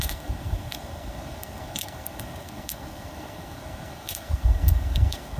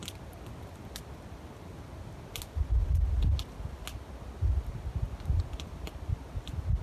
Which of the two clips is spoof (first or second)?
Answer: first